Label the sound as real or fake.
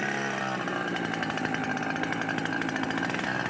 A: real